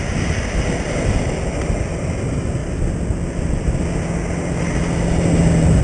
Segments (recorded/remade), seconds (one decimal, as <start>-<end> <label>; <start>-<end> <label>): 0.0-5.8 recorded